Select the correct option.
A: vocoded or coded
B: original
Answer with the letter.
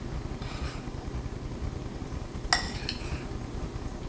B